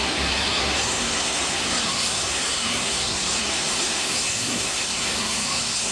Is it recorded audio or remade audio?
remade